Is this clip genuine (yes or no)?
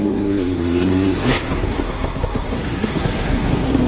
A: no